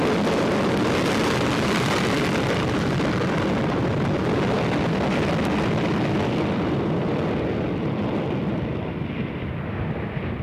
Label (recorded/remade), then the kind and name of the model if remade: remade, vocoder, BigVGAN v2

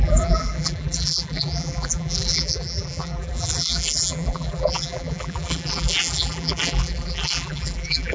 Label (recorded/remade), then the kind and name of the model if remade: remade, vocoder, BigVGAN v2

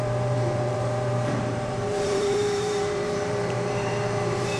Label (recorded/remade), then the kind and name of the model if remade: remade, vocoder, BigVGAN v2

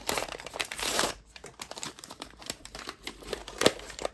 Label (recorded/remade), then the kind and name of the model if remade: remade, vocoder, BigVGAN v2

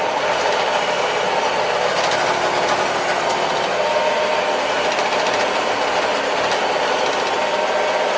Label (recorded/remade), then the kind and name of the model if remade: remade, vocoder, BigVGAN v2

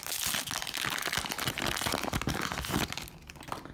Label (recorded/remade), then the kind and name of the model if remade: recorded